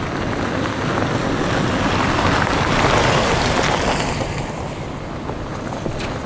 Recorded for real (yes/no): yes